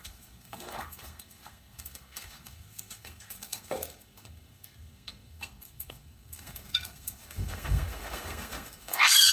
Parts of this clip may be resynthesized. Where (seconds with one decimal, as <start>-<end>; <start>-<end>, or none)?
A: 0.0-9.3